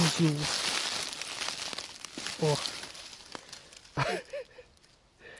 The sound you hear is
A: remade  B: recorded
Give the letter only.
B